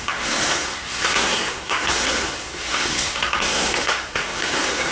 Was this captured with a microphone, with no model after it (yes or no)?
no